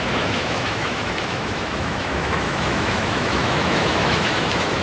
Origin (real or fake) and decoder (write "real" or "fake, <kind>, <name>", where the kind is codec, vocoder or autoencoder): fake, autoencoder, DAC-VAE